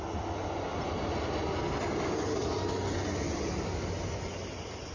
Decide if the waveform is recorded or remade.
recorded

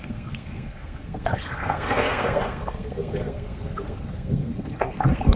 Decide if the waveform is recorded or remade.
remade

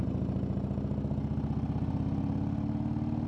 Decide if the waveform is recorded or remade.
recorded